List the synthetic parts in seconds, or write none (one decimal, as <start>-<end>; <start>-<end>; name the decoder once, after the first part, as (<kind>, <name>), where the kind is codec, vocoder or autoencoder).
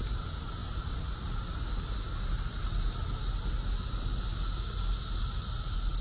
none